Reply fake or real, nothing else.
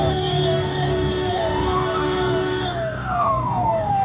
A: fake